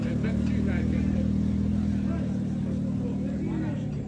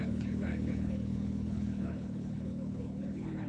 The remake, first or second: second